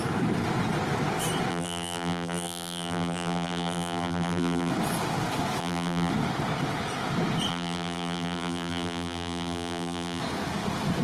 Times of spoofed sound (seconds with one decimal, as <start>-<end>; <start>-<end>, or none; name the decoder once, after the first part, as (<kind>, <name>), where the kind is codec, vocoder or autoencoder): 1.5-4.7 (vocoder, BigVGAN v2); 5.6-6.1; 7.5-10.2